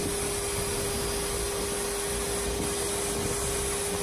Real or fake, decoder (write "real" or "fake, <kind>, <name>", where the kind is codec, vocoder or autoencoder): real